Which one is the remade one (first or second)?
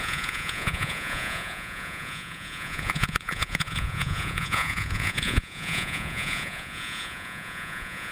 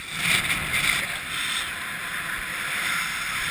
first